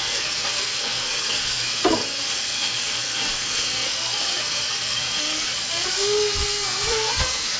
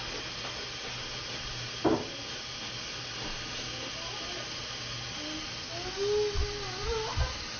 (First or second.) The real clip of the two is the second